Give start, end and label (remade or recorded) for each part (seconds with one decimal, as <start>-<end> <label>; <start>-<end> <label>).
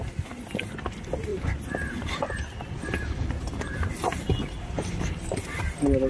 0.0-6.1 recorded